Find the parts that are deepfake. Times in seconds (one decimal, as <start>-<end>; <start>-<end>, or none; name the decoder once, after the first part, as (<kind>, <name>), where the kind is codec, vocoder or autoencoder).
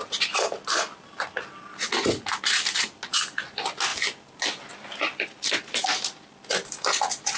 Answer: none